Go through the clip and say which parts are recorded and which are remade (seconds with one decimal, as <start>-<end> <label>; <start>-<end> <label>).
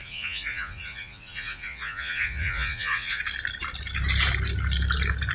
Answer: 0.0-3.2 remade; 3.2-5.3 recorded